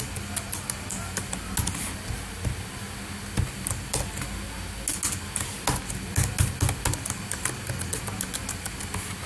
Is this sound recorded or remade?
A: recorded